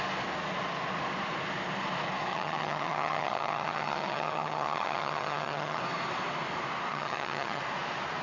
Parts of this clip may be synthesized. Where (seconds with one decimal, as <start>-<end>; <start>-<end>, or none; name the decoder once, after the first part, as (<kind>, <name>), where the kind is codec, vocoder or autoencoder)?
2.3-5.8 (vocoder, HiFi-GAN); 6.9-7.6